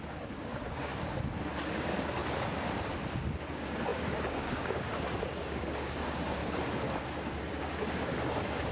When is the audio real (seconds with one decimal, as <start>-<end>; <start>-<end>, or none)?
0.9-1.7; 2.2-3.5; 6.4-7.2